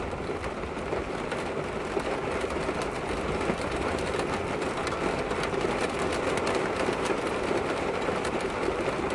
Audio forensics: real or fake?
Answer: real